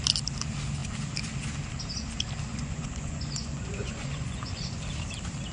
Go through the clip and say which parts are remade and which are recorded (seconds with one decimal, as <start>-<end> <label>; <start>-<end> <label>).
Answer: 0.0-2.5 recorded; 2.5-4.8 remade; 4.8-5.5 recorded